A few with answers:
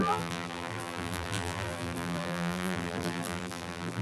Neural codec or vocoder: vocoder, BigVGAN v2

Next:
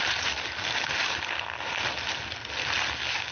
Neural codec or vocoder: none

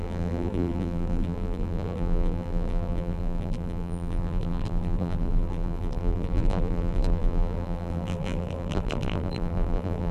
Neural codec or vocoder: vocoder, BigVGAN v2